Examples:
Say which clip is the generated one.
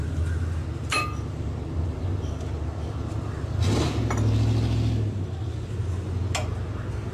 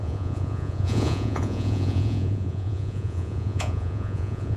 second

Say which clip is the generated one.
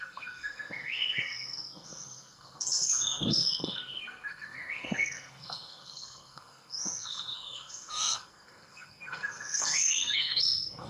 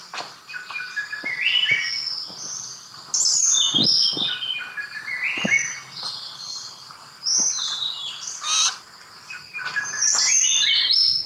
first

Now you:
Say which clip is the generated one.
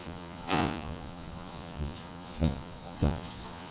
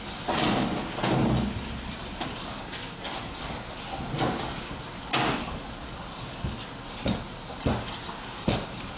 first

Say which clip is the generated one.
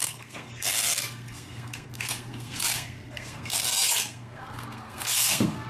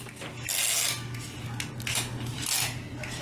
first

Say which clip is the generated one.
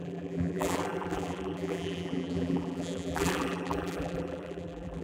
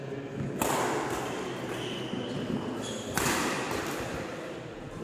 first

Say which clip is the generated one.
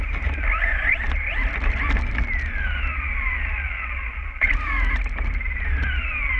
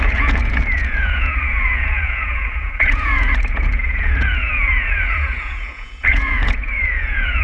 second